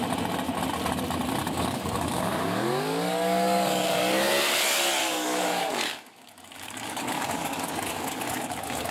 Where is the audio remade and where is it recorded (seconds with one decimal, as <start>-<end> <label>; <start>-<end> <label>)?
0.0-1.4 recorded; 1.4-4.3 remade; 4.3-5.0 recorded; 5.0-8.9 remade